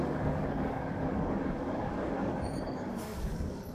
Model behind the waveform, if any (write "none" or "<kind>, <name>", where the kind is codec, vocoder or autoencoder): codec, DAC